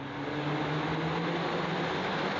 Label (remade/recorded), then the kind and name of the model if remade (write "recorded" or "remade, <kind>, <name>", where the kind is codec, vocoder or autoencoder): recorded